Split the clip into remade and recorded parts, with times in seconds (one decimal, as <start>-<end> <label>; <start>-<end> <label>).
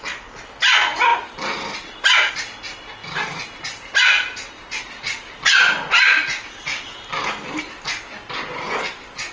0.0-9.3 recorded